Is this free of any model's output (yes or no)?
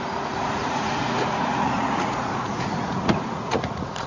no